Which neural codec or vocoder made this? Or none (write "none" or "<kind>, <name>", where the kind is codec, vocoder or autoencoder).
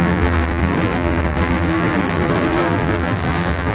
vocoder, BigVGAN v2